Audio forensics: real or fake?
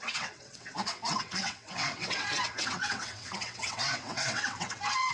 fake